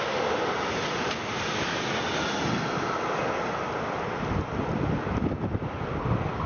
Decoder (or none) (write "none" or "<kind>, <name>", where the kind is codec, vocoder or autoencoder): none